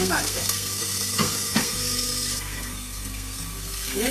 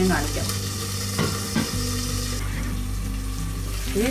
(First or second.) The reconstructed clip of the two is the first